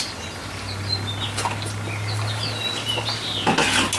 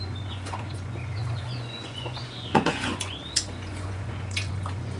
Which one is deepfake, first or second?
second